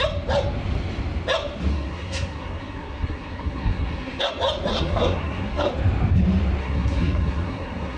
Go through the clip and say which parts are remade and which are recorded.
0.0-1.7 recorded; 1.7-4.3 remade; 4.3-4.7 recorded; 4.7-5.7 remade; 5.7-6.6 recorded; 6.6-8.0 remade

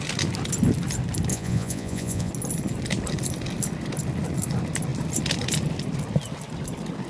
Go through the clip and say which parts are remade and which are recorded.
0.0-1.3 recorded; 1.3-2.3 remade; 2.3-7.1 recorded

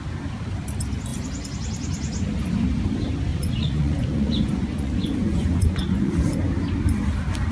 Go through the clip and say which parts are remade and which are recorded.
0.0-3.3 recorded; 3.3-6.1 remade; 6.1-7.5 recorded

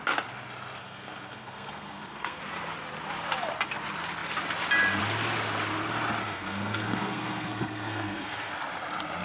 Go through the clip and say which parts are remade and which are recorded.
0.0-0.8 recorded; 0.8-2.4 remade; 2.4-6.2 recorded; 6.2-8.5 remade; 8.5-9.2 recorded

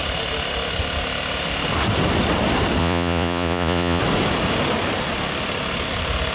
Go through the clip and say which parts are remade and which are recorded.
0.0-2.8 recorded; 2.8-4.0 remade; 4.0-6.3 recorded

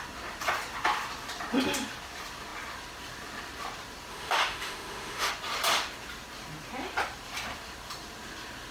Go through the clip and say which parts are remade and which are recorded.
0.0-4.1 recorded; 4.1-5.3 remade; 5.3-8.7 recorded

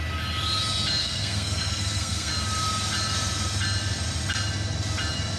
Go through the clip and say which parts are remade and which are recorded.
0.0-1.0 recorded; 1.0-2.3 remade; 2.3-5.4 recorded